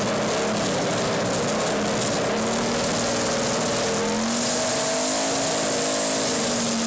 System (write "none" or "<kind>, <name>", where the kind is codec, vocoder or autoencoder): none